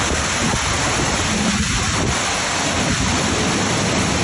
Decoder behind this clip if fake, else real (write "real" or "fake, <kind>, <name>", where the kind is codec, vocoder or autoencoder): real